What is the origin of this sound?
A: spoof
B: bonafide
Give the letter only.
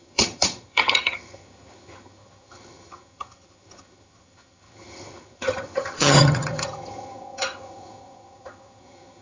A